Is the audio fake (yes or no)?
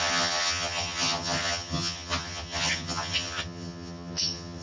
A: yes